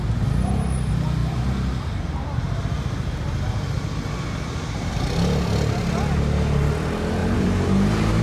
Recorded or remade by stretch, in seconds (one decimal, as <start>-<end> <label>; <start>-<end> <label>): 0.0-7.2 recorded; 7.2-8.2 remade